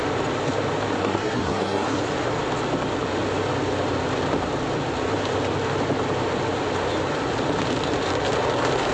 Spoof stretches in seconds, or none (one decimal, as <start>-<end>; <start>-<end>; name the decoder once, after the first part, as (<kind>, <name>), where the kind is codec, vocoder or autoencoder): 1.0-2.0 (codec, SNAC)